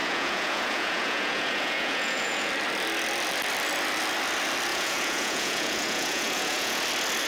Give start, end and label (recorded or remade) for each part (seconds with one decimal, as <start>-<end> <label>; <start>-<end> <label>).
0.0-2.5 remade; 2.5-4.7 recorded; 4.7-6.8 remade; 6.8-7.3 recorded

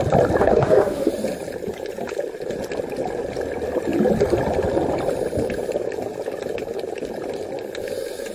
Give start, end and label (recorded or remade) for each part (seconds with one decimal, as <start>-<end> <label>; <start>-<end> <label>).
0.0-0.4 recorded; 0.4-1.1 remade; 1.1-8.3 recorded

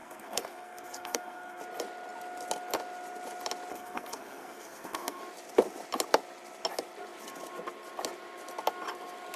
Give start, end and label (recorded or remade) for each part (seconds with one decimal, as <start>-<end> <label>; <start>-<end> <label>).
0.0-1.6 remade; 1.6-3.7 recorded; 3.7-5.2 remade; 5.2-9.4 recorded

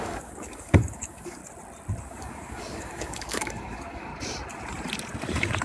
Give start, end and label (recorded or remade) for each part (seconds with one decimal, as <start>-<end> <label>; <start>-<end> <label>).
0.0-1.4 remade; 1.4-2.0 recorded; 2.0-4.1 remade; 4.1-5.6 recorded

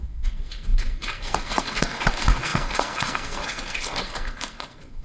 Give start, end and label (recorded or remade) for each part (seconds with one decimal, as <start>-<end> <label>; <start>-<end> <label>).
0.0-5.0 remade

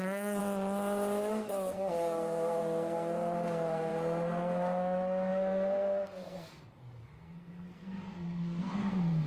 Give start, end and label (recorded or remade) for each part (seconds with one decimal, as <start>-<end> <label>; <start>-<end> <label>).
0.0-0.4 remade; 0.4-1.3 recorded; 1.3-9.3 remade